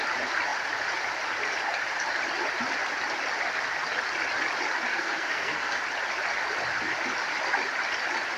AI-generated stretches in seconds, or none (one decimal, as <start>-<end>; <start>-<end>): 4.9-5.8